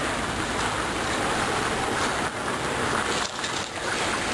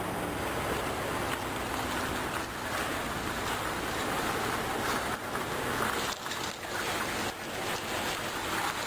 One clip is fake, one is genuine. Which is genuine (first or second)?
second